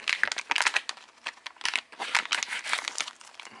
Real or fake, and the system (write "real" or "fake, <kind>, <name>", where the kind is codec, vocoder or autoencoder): real